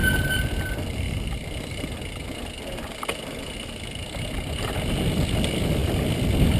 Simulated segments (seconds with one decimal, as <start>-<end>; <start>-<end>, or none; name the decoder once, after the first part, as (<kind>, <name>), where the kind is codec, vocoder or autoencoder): none